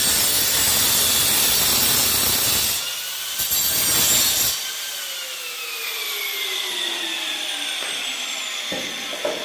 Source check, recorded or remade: recorded